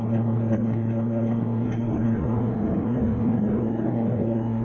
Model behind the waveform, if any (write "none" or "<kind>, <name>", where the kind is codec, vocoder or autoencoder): codec, SNAC